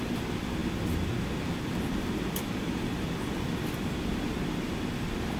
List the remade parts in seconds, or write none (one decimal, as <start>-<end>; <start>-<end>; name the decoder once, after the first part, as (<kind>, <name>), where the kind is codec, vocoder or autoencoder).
none